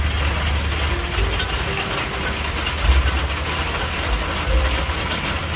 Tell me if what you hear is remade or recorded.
recorded